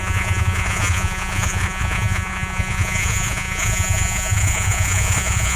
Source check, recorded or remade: remade